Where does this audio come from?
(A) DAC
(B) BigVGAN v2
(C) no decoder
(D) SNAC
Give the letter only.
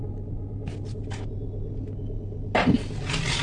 C